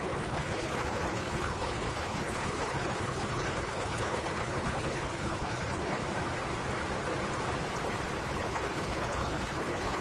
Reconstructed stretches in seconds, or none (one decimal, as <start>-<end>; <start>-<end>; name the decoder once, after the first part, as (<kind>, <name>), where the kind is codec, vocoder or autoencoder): 0.0-6.0 (codec, HILCodec); 8.3-10.0